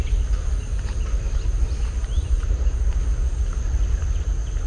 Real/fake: real